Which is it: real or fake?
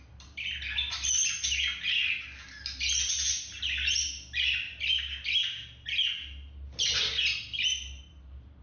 real